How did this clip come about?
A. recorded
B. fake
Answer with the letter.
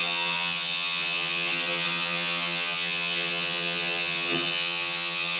B